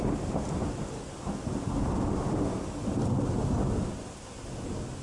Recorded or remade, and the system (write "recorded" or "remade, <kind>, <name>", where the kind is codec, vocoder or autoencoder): recorded